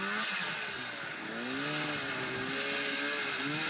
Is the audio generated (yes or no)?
no